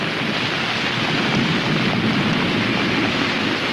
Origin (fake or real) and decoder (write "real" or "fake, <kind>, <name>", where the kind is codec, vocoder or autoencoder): real